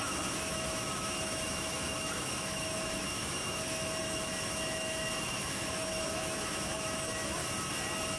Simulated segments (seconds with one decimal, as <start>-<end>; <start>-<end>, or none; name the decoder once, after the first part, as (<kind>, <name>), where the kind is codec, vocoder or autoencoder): 0.0-7.4 (autoencoder, DAC-VAE)